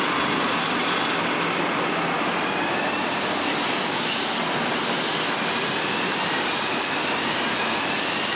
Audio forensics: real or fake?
real